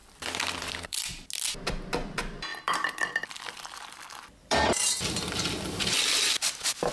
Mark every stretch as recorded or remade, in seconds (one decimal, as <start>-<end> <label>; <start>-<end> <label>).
0.0-1.3 remade; 1.3-2.5 recorded; 2.5-6.9 remade